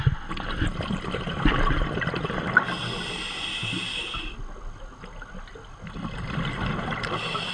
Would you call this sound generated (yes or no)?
no